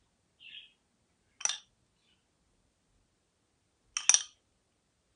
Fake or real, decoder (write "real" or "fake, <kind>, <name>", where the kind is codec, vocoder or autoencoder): real